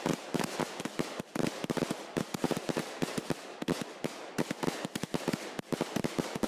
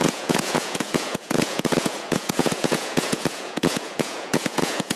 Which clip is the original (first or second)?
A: first